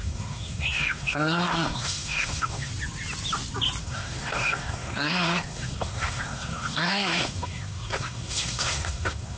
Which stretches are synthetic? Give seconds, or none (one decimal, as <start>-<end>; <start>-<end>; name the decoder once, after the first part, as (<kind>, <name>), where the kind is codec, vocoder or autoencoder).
0.0-2.7 (codec, SNAC); 3.8-9.4